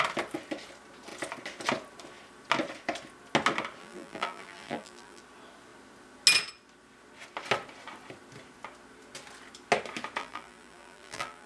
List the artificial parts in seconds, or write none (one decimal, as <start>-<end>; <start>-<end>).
3.8-5.2; 10.2-11.5